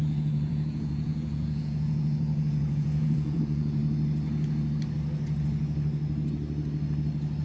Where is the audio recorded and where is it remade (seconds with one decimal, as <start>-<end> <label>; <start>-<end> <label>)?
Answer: 0.0-3.8 remade; 3.8-7.4 recorded